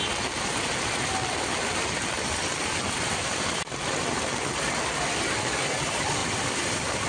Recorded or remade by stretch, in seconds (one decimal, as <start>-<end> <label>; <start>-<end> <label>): 0.0-6.2 recorded; 6.2-7.1 remade